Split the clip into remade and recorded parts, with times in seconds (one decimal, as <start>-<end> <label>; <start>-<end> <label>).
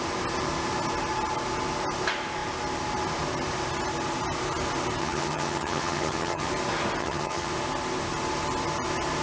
0.0-5.0 recorded; 5.0-6.5 remade; 6.5-7.0 recorded; 7.0-7.5 remade; 7.5-9.2 recorded